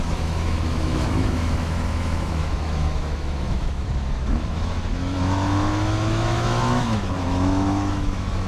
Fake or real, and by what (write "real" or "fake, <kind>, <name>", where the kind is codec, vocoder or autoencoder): fake, autoencoder, DAC-VAE